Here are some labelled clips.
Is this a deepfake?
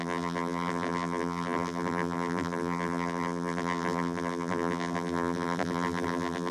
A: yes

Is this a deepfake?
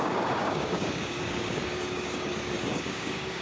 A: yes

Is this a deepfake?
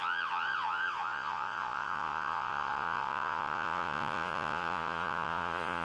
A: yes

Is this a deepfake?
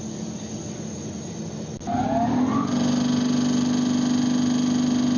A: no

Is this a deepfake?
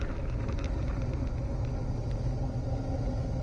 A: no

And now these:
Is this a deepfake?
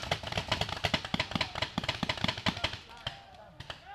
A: no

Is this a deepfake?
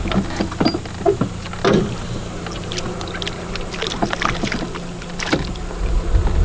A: no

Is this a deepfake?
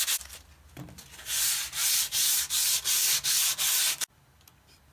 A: no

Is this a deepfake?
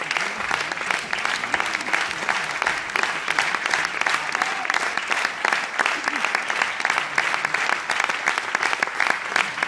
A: no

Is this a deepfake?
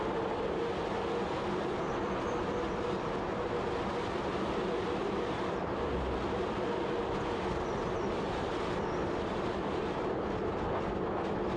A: no